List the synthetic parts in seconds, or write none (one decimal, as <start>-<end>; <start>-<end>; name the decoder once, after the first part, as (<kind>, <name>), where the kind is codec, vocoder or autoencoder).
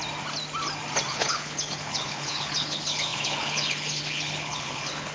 1.1-5.1 (codec, HILCodec)